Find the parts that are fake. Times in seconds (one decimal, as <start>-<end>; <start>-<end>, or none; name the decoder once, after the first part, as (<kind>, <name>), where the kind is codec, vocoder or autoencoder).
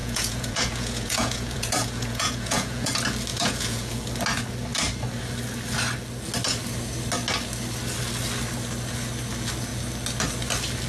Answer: 0.0-2.9 (vocoder, Vocos); 3.3-4.0